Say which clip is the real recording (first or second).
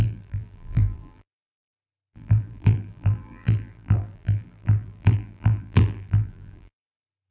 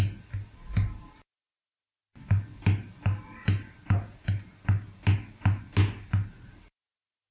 second